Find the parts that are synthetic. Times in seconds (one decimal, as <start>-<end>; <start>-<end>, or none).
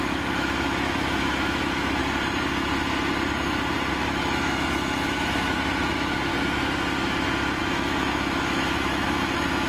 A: 0.0-2.0; 3.9-6.3; 7.6-9.7